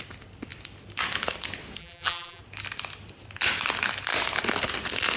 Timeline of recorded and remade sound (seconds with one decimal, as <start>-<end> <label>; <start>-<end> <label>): 0.0-1.8 recorded; 1.8-2.4 remade; 2.4-5.2 recorded